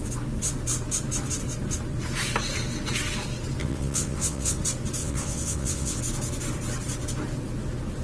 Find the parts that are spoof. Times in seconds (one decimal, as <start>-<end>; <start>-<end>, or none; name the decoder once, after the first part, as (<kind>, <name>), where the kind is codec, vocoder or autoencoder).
3.6-4.6 (vocoder, WaveNeXt); 5.0-6.0